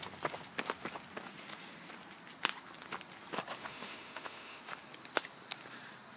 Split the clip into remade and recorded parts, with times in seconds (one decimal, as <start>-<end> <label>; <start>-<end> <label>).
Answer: 0.0-3.6 recorded; 3.6-4.6 remade; 4.6-6.2 recorded